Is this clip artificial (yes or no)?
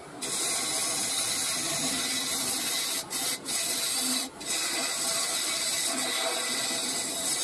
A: no